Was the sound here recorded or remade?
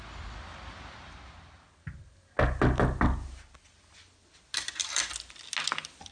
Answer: recorded